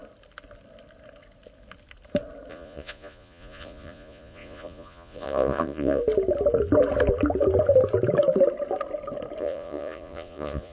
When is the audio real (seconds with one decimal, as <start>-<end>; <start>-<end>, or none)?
0.0-2.5; 6.0-9.4